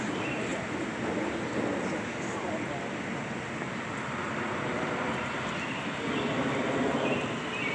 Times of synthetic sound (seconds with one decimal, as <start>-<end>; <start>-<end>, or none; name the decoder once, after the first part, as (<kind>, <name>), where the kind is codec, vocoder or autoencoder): none